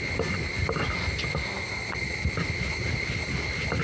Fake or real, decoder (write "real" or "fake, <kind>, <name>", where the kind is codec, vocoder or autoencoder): real